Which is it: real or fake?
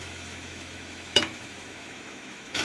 fake